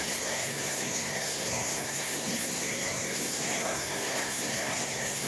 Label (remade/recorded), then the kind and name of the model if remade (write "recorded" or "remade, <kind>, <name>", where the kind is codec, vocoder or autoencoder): remade, codec, SNAC